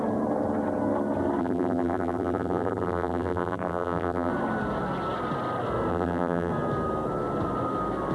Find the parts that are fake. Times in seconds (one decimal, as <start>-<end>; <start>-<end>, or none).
1.4-4.3; 5.9-6.5